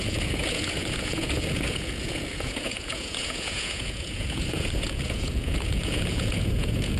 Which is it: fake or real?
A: fake